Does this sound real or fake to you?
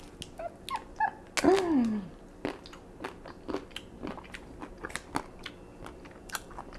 real